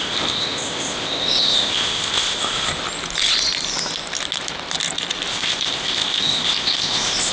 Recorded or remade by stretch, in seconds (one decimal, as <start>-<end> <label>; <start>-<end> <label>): 0.0-2.7 remade; 2.7-5.3 recorded; 5.3-7.3 remade